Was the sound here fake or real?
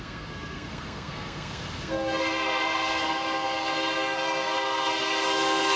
fake